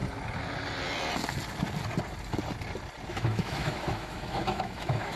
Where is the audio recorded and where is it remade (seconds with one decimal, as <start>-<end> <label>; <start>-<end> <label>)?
0.0-3.1 recorded; 3.1-5.2 remade